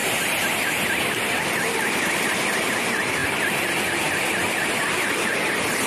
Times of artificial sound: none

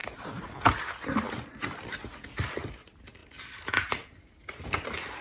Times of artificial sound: 0.0-1.9 (vocoder, BigVGAN v2); 3.2-3.7

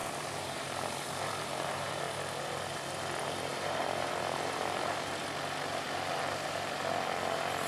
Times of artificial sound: 0.0-2.0 (vocoder, BigVGAN v2); 3.5-5.1

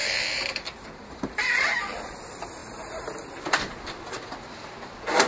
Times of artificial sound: 0.0-2.1 (vocoder, BigVGAN v2)

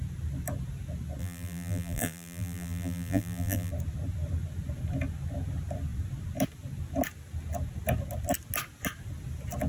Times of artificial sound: 1.2-3.7 (vocoder, BigVGAN v2)

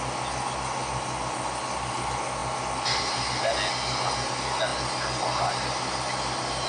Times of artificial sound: none

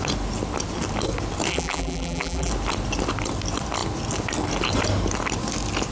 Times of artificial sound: 1.5-2.5 (vocoder, BigVGAN v2)